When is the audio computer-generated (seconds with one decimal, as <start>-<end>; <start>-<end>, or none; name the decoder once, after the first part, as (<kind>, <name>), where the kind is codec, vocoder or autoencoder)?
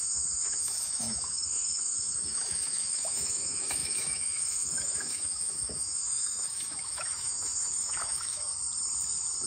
0.0-8.5 (autoencoder, DAC-VAE)